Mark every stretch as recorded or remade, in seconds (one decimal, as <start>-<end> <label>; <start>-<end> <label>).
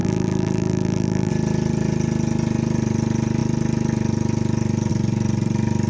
0.0-1.3 remade; 1.3-5.9 recorded